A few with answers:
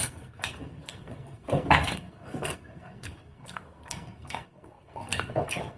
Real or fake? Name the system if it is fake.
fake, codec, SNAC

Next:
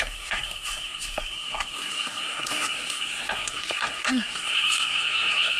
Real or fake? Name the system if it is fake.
fake, codec, SNAC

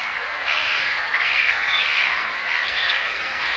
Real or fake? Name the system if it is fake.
fake, codec, SNAC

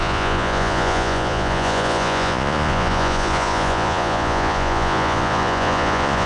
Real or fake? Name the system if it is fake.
fake, vocoder, Vocos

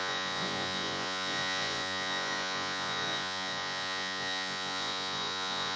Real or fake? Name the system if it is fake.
fake, vocoder, Vocos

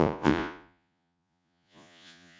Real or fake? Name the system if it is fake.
fake, vocoder, Vocos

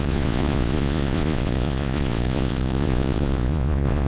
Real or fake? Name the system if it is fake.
fake, vocoder, Vocos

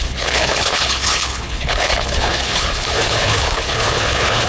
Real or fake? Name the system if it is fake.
fake, codec, HILCodec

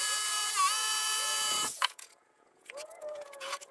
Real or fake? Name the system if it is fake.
fake, vocoder, Vocos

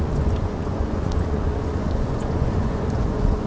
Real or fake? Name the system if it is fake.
fake, vocoder, Vocos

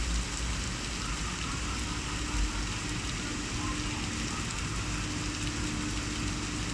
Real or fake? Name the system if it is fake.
real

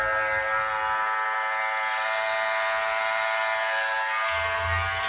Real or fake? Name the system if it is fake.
real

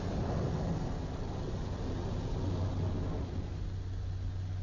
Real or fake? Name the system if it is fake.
real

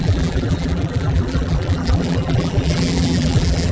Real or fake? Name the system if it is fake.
fake, vocoder, BigVGAN v2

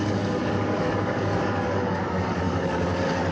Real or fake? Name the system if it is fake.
fake, codec, DAC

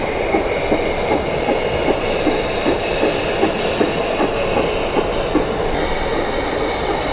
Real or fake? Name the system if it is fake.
real